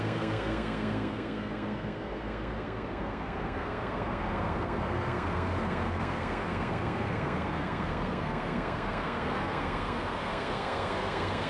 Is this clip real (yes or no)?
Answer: no